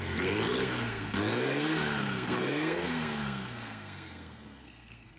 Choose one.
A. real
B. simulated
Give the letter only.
B